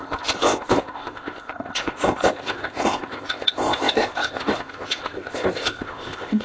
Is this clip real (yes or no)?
no